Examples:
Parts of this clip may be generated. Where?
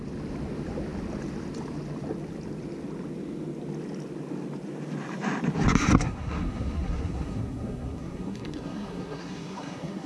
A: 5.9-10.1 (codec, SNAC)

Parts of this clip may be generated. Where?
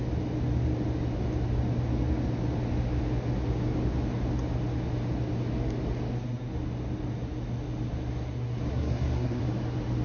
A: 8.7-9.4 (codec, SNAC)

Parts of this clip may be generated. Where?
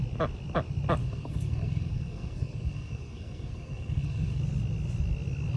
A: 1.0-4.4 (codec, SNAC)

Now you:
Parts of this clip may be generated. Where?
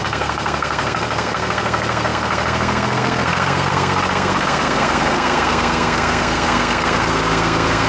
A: 0.0-7.9 (codec, SNAC)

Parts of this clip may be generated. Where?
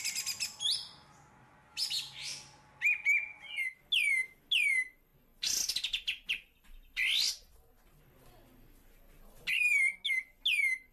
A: none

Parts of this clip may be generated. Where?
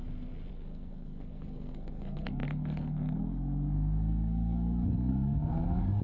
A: 0.5-6.0 (codec, SNAC)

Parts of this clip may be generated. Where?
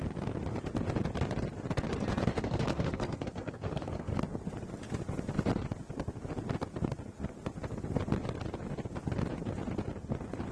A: 2.3-4.1 (codec, SNAC)